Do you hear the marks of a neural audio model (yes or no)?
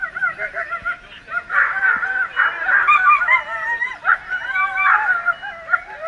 no